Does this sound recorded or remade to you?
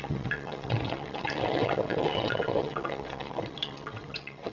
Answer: remade